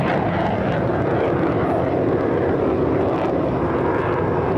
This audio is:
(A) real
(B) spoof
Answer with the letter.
A